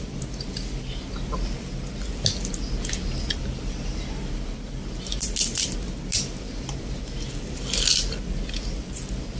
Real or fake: real